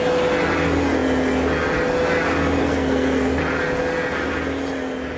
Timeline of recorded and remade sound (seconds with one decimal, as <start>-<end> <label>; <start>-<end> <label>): 0.0-2.6 recorded; 2.6-3.4 remade; 3.4-5.2 recorded